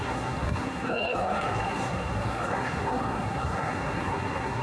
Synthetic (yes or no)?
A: yes